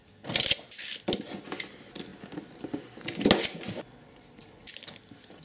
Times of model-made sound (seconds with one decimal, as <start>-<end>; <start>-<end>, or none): none